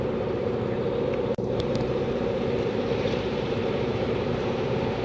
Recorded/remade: remade